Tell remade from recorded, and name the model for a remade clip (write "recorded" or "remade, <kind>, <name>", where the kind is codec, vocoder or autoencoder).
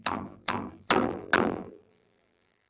remade, vocoder, BigVGAN v2